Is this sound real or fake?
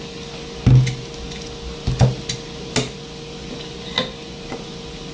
real